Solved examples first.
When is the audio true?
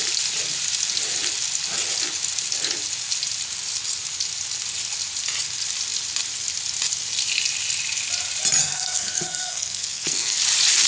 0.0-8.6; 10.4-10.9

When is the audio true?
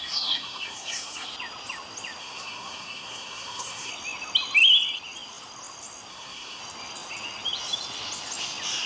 1.3-2.2; 3.9-6.1; 6.6-8.9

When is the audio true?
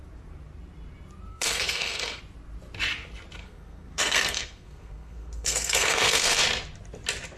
0.0-1.3; 2.2-3.4; 6.4-7.4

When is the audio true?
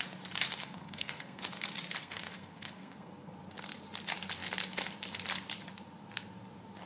0.0-0.6; 1.4-2.0; 3.3-6.9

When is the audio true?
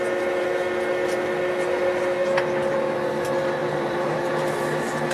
0.0-3.6; 4.3-5.1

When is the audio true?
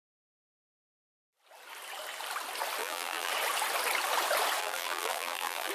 0.0-2.8; 3.3-4.6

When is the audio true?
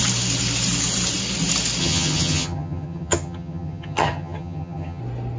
0.0-1.8; 5.0-5.4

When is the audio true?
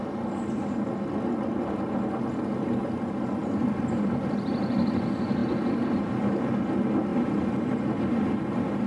0.0-3.4; 4.8-5.4; 6.0-7.1; 7.9-8.9